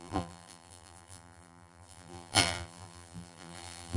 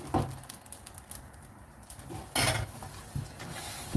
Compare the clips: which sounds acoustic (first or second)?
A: second